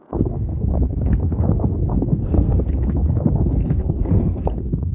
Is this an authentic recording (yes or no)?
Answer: no